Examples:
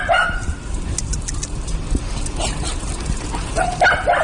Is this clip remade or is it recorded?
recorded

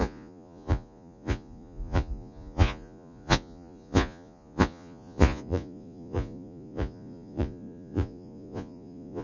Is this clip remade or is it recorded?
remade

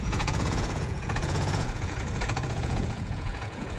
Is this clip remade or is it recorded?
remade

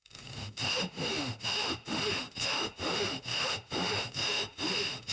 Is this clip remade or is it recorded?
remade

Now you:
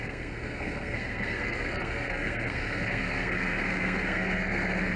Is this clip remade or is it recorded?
remade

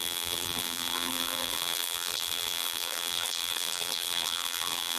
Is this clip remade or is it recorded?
remade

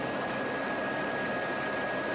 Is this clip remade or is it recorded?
recorded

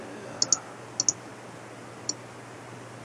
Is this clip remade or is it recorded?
recorded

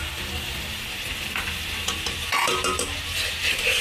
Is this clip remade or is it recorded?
recorded